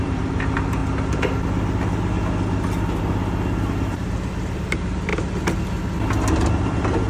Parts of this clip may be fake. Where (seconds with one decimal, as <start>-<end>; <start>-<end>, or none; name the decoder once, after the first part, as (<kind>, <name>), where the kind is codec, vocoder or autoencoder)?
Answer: 0.0-0.8 (vocoder, BigVGAN v2); 3.0-5.1; 6.4-7.1